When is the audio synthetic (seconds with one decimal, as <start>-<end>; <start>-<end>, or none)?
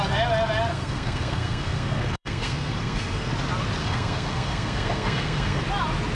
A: 0.7-3.3; 3.8-5.6